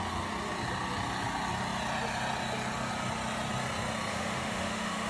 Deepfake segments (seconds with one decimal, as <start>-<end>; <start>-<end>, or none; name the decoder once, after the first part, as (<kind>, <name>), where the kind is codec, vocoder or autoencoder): 4.1-5.1 (autoencoder, DAC-VAE)